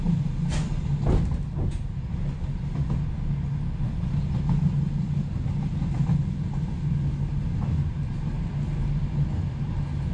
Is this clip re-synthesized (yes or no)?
no